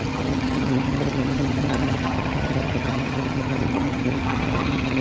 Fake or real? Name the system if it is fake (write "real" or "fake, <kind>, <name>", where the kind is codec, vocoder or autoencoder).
fake, vocoder, HiFi-GAN